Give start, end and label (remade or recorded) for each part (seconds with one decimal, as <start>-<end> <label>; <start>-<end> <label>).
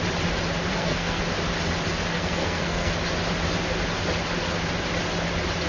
0.0-0.7 recorded; 0.7-1.2 remade; 1.2-2.1 recorded; 2.1-2.9 remade; 2.9-5.7 recorded